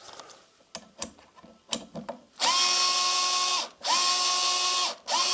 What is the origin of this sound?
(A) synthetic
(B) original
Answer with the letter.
B